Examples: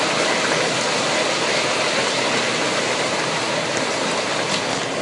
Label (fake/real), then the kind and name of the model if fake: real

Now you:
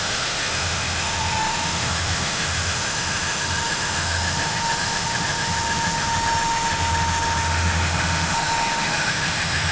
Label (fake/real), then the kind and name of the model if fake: fake, autoencoder, DAC-VAE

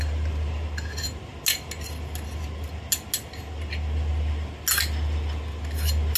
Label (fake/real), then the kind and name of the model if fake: real